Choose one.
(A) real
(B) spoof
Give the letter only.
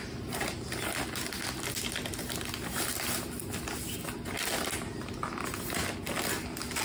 A